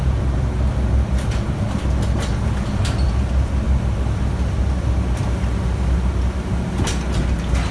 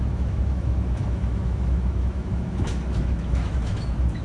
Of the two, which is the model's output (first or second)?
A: second